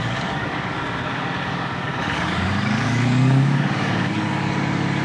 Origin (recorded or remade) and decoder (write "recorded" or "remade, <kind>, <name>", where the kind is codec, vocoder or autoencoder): remade, codec, DAC